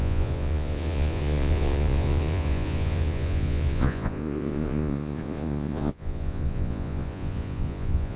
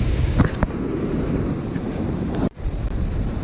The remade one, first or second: first